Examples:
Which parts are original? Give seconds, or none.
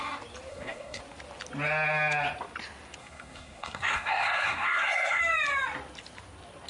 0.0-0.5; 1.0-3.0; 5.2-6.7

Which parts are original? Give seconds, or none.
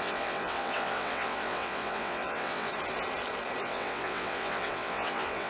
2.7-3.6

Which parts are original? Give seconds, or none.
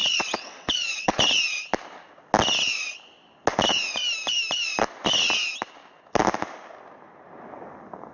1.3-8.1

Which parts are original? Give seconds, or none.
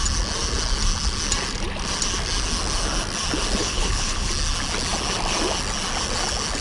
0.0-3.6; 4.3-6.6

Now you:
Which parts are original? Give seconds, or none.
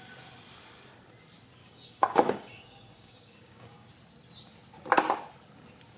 0.0-1.6; 3.9-6.0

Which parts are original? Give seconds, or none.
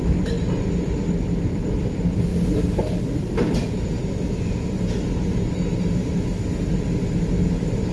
0.0-7.9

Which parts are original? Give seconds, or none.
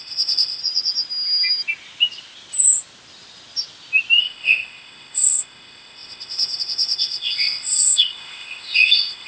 0.6-4.2